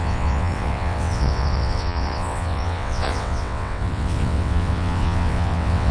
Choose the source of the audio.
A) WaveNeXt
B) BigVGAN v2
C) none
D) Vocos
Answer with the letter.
A